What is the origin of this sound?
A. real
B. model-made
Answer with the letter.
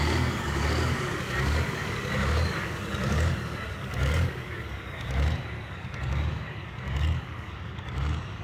B